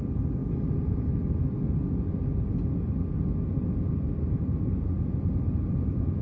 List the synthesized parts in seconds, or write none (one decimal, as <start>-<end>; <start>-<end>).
0.4-1.1